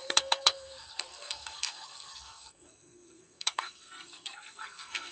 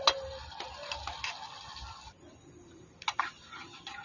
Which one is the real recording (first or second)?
second